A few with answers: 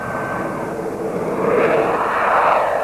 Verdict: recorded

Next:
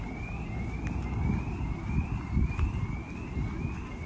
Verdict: recorded